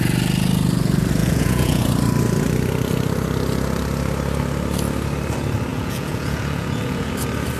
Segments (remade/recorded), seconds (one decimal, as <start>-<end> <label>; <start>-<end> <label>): 0.0-1.2 recorded; 1.2-1.8 remade; 1.8-5.7 recorded; 5.7-7.1 remade; 7.1-7.6 recorded